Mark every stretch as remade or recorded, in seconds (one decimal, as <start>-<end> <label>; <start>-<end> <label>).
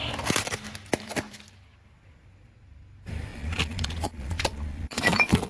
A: 0.0-3.3 recorded; 3.3-5.5 remade